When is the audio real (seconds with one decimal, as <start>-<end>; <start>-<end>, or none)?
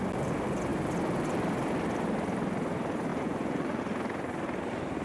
0.0-3.1; 3.8-5.0